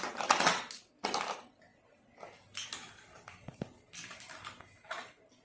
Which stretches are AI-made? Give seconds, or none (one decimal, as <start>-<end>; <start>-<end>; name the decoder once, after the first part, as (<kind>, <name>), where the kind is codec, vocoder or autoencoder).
none

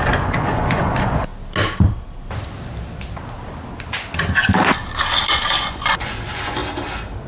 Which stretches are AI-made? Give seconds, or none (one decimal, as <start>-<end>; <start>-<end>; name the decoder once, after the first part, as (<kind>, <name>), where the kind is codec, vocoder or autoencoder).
0.0-1.3 (vocoder, Vocos); 5.6-6.6

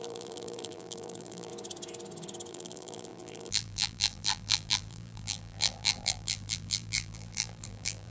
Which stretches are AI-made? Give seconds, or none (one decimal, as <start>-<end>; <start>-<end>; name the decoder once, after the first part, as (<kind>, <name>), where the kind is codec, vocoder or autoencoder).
0.0-1.5 (vocoder, BigVGAN v2); 2.5-8.1

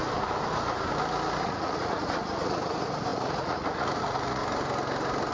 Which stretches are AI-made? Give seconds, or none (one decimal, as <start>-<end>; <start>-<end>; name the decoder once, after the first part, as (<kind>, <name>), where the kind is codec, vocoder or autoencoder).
1.4-4.4 (vocoder, Vocos)

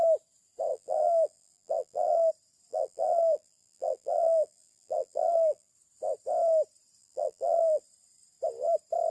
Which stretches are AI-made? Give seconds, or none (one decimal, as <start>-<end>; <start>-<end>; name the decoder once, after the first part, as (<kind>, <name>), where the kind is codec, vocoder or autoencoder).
0.7-2.3 (vocoder, BigVGAN v2); 2.7-5.7; 7.0-7.8